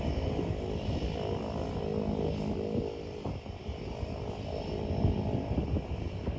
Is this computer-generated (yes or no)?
no